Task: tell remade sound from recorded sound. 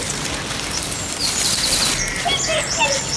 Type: recorded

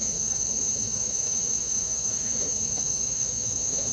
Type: remade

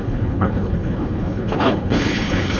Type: remade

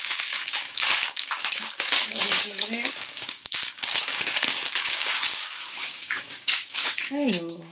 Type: remade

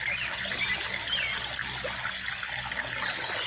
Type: recorded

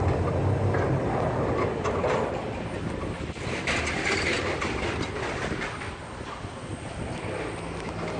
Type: recorded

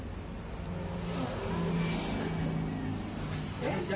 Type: recorded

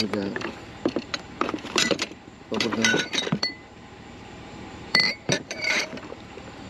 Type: remade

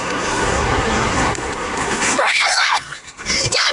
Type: remade